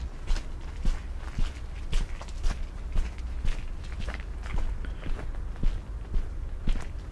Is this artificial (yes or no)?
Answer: no